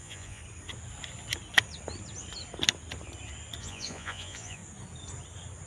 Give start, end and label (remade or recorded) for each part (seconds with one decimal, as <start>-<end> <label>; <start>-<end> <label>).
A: 0.0-0.4 remade; 0.4-3.6 recorded; 3.6-4.6 remade; 4.6-5.7 recorded